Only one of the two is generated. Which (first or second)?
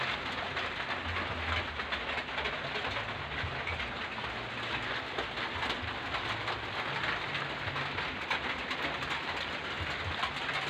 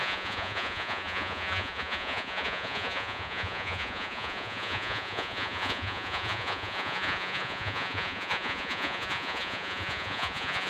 second